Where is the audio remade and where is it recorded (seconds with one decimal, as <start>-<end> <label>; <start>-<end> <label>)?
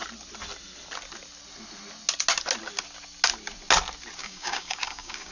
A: 0.0-4.2 recorded; 4.2-5.3 remade